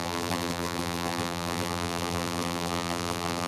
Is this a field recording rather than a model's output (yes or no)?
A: no